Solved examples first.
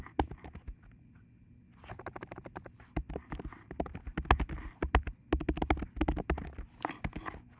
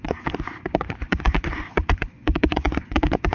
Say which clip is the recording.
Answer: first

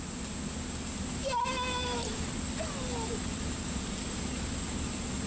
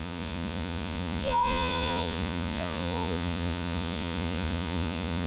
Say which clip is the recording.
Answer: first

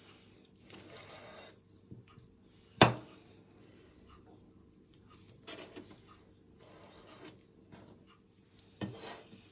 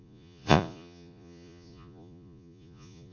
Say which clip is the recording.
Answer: first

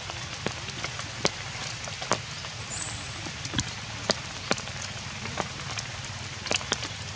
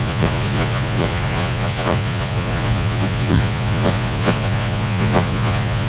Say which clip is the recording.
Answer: first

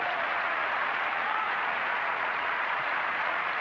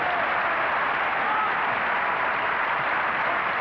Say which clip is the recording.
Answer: second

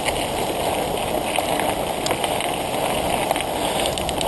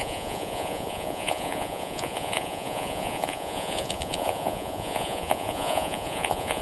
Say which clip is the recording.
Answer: first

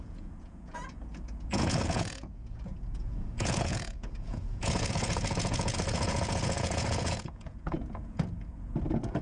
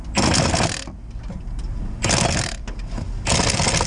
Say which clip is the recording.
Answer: second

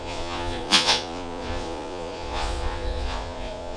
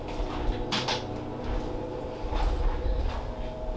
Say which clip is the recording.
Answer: second